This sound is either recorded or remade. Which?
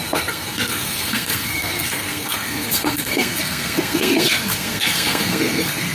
remade